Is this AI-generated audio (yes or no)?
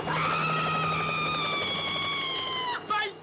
no